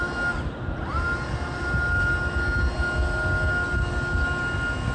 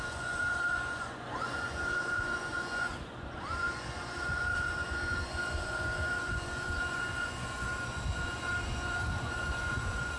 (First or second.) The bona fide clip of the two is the first